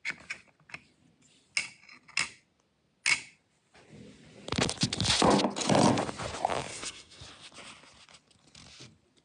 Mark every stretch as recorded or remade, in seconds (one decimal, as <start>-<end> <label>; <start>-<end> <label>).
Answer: 0.0-6.7 recorded; 6.7-7.2 remade; 7.2-9.2 recorded